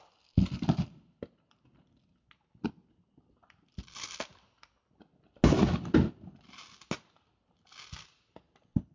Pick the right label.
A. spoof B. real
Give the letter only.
B